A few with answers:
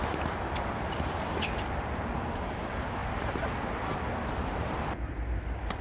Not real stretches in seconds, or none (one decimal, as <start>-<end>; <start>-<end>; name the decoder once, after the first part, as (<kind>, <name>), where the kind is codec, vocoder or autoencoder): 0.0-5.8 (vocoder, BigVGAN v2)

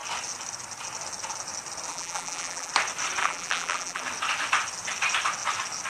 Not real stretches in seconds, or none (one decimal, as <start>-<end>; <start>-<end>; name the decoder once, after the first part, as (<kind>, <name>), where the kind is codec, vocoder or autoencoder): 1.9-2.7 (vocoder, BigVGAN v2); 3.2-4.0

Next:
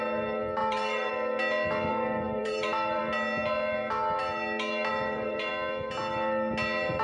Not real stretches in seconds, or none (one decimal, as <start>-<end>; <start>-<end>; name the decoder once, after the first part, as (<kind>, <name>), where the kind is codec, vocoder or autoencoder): 0.6-1.1 (vocoder, BigVGAN v2); 1.9-3.0; 4.9-5.5

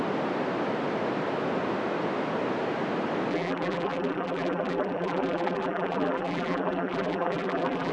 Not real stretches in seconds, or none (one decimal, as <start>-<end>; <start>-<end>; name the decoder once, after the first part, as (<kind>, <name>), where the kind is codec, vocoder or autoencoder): 3.3-7.9 (vocoder, BigVGAN v2)